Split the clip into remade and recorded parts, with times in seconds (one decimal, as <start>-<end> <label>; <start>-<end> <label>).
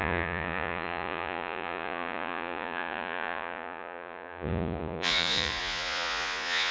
0.0-6.7 remade